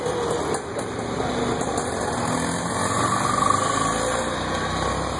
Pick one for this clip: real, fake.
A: real